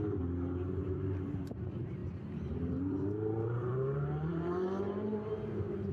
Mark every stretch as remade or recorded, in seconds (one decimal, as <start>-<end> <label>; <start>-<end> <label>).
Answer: 0.0-5.9 remade